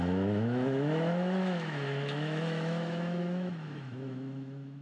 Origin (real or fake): fake